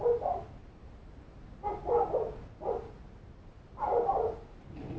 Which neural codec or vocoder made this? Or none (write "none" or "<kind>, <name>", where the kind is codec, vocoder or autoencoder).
none